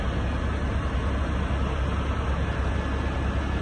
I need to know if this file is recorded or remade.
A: recorded